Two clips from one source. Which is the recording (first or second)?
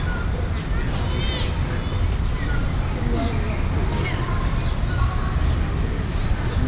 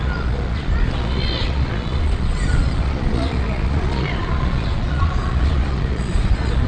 first